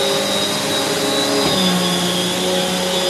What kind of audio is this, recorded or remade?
recorded